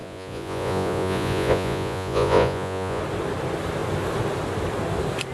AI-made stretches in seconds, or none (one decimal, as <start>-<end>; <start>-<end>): 0.0-3.0